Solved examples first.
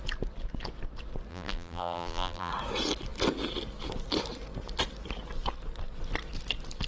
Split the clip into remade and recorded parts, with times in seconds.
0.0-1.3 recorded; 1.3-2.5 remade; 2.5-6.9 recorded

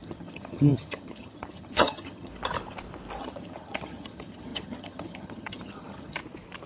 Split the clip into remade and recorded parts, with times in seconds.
0.0-2.3 remade; 2.3-3.2 recorded; 3.2-6.2 remade; 6.2-6.7 recorded

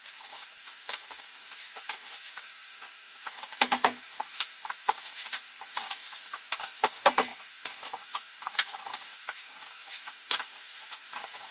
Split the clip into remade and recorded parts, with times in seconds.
0.0-11.5 remade

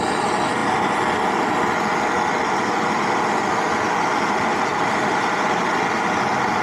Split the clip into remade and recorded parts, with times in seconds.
0.0-6.6 recorded

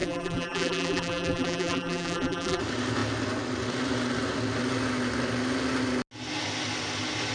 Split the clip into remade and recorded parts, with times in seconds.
0.0-2.6 remade; 2.6-7.3 recorded

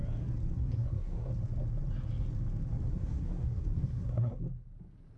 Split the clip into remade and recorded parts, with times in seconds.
0.0-0.5 recorded; 0.5-1.3 remade; 1.3-2.9 recorded; 2.9-4.4 remade; 4.4-5.2 recorded